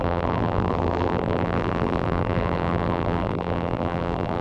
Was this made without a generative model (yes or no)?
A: no